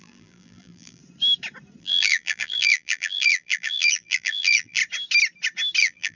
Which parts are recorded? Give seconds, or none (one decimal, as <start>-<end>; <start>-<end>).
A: 1.0-1.8; 4.8-5.8